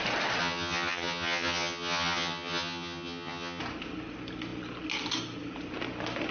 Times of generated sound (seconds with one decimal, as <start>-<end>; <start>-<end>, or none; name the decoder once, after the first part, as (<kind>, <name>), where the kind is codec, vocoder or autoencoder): 0.4-3.6 (vocoder, HiFi-GAN)